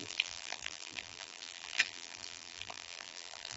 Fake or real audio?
fake